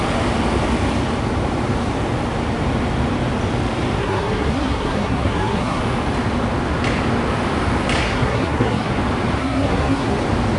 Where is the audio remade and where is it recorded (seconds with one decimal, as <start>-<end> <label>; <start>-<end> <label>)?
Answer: 0.0-4.0 recorded; 4.0-5.8 remade; 5.8-8.0 recorded; 8.0-8.9 remade; 8.9-9.4 recorded; 9.4-10.2 remade; 10.2-10.6 recorded

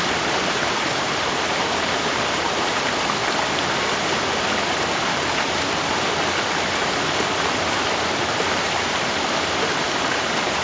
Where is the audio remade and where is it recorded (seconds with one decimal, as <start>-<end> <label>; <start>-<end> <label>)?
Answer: 0.0-3.2 remade; 3.2-7.0 recorded; 7.0-10.6 remade

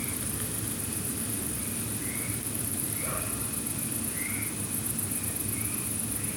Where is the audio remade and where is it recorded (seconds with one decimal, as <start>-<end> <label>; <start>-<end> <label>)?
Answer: 0.0-3.3 remade; 3.3-6.4 recorded